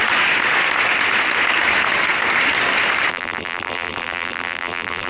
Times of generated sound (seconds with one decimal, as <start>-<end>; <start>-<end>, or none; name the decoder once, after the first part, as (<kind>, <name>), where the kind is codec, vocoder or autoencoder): 3.1-5.1 (vocoder, BigVGAN v2)